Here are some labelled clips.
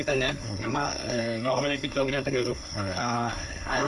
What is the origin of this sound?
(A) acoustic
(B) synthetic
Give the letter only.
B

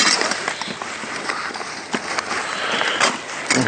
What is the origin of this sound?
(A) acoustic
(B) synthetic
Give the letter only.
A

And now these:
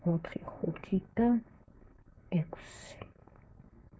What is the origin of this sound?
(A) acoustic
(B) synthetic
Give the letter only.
B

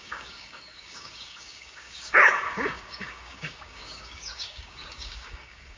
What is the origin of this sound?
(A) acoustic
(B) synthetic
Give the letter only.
B